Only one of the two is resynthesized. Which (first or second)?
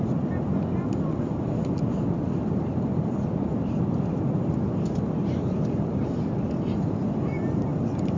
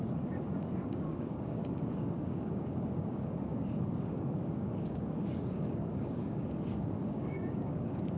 second